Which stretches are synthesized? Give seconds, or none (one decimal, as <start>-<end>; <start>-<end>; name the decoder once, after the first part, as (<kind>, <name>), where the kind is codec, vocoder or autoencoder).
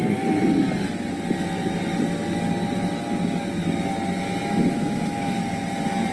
4.4-5.4 (autoencoder, DAC-VAE)